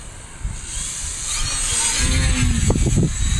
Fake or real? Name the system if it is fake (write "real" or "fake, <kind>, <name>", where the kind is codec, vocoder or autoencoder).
real